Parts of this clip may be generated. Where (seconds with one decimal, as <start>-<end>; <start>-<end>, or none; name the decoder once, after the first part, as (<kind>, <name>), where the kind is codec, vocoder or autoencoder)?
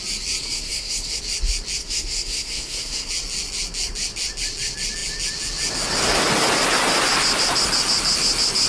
0.4-1.2 (codec, SNAC); 1.8-3.1